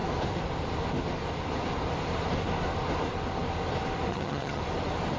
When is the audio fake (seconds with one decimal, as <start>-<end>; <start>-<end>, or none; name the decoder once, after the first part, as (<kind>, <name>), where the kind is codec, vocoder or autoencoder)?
4.1-4.6 (vocoder, HiFi-GAN)